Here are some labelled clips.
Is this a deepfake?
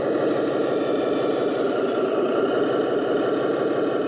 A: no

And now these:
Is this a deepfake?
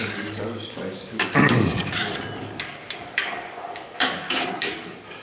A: yes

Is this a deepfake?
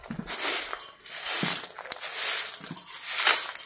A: no